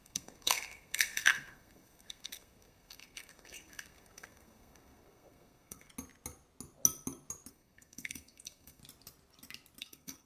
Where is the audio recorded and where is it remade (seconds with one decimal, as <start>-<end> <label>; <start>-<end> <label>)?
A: 0.0-5.9 remade; 5.9-7.5 recorded; 7.5-8.8 remade; 8.8-9.8 recorded; 9.8-10.3 remade